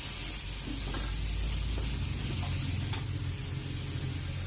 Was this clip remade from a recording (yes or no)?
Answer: no